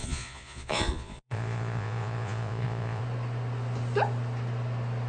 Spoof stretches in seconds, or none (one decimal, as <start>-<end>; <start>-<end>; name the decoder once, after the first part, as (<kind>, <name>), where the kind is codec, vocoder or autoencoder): 0.0-3.0 (vocoder, Vocos)